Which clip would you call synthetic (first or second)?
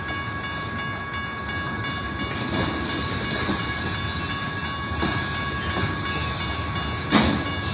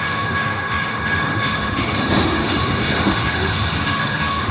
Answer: second